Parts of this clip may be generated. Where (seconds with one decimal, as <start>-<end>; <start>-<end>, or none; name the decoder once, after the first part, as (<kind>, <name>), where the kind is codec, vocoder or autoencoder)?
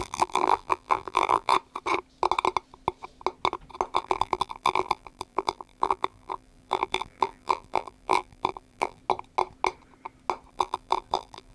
0.0-1.5 (vocoder, BigVGAN v2); 4.0-9.0; 10.5-11.5